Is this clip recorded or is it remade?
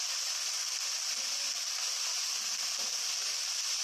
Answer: recorded